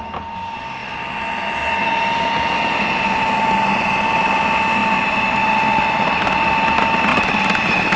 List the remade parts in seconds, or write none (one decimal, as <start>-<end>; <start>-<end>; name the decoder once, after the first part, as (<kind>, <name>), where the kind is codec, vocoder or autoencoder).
4.8-6.0 (vocoder, BigVGAN v2); 7.1-8.0